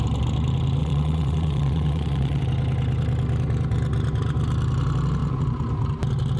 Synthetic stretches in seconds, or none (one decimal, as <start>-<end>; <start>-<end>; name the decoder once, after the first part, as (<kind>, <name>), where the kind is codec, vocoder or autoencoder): 0.8-2.4 (vocoder, Vocos)